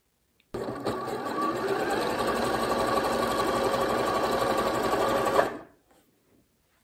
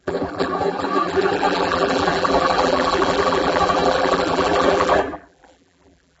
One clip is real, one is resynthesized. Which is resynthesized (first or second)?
second